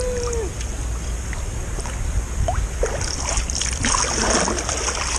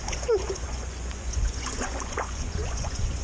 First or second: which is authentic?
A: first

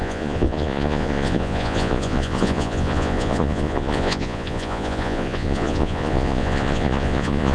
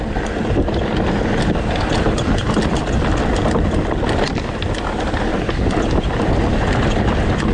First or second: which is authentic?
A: second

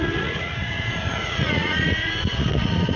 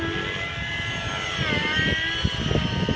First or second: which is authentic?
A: second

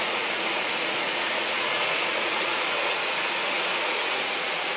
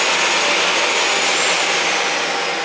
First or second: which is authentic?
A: second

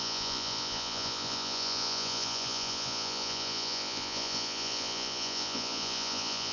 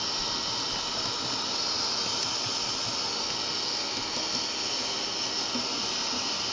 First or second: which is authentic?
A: second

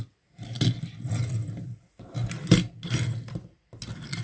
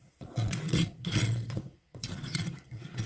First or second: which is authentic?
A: first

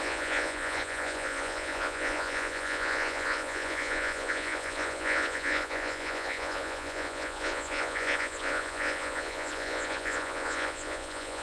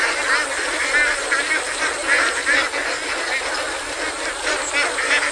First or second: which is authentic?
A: second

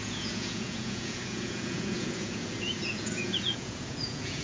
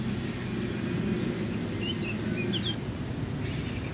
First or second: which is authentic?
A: second